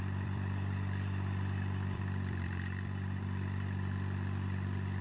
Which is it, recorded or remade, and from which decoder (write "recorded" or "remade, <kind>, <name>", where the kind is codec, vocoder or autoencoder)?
remade, vocoder, BigVGAN v2